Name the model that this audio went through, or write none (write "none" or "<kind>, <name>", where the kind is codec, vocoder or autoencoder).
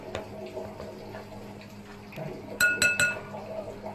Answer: none